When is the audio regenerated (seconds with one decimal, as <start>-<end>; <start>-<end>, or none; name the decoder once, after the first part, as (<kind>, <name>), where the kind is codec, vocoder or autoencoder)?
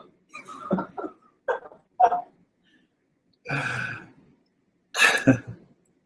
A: 2.9-3.9 (vocoder, Vocos)